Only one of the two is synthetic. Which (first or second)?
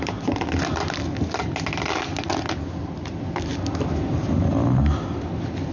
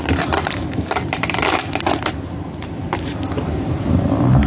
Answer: second